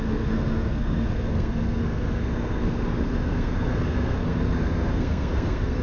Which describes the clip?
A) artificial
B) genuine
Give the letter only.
A